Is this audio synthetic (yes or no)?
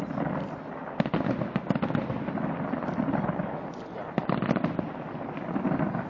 no